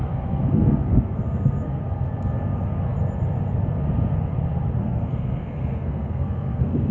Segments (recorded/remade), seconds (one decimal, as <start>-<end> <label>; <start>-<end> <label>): 0.0-1.8 remade; 1.8-4.8 recorded; 4.8-6.9 remade